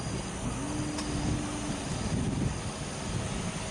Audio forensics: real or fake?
real